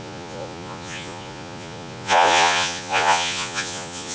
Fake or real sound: fake